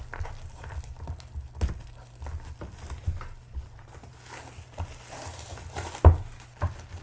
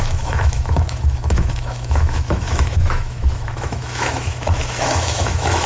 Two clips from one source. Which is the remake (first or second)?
second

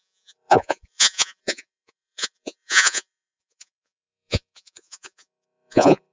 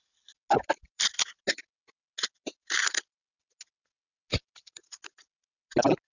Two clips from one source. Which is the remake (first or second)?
first